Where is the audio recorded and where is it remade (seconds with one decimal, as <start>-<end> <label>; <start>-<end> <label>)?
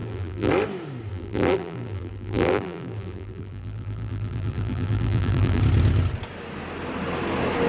0.0-0.5 remade; 0.5-1.1 recorded; 1.1-5.6 remade; 5.6-7.7 recorded